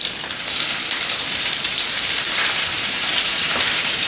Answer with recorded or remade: remade